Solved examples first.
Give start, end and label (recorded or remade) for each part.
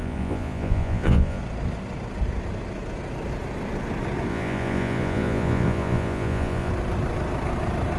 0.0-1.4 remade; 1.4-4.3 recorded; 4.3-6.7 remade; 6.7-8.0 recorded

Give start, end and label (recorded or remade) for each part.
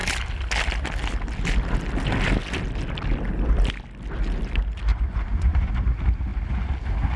0.0-4.9 recorded; 4.9-5.7 remade; 5.7-7.2 recorded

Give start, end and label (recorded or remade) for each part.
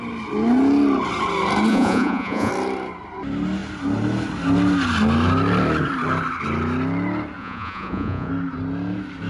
0.0-1.7 recorded; 1.7-2.5 remade; 2.5-7.4 recorded; 7.4-8.3 remade; 8.3-9.3 recorded